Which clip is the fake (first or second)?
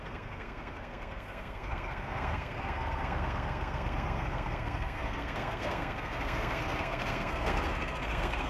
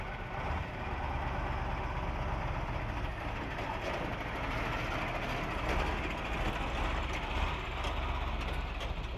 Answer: first